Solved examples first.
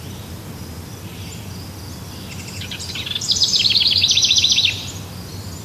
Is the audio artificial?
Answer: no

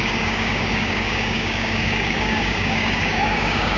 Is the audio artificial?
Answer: yes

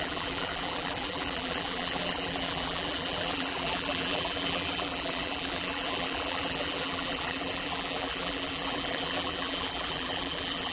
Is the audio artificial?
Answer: yes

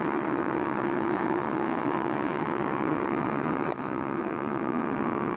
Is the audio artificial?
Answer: yes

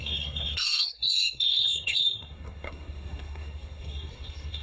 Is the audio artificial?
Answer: yes